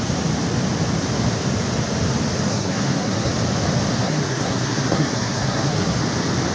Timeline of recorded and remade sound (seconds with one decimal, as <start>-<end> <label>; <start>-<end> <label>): 0.0-2.5 recorded; 2.5-3.3 remade; 3.3-4.0 recorded; 4.0-6.0 remade; 6.0-6.5 recorded